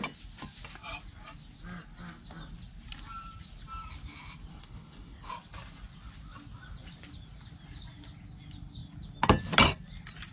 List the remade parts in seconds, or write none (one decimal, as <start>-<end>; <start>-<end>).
4.5-5.3